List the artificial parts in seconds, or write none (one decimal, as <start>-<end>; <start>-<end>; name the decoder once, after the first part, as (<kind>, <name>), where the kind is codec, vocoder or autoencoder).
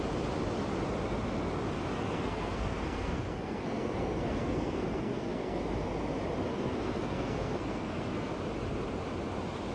1.9-5.6 (codec, SNAC); 6.5-8.3